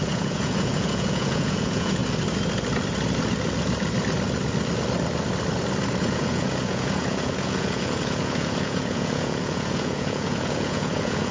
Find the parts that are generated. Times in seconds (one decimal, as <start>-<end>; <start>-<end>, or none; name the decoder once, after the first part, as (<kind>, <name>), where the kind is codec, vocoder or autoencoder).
0.0-2.0 (vocoder, Vocos); 6.0-11.3